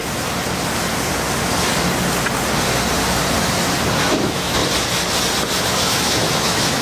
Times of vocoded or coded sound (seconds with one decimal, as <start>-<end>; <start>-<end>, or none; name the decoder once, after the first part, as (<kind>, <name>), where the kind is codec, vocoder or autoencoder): 4.0-4.6 (autoencoder, DAC-VAE); 5.8-6.8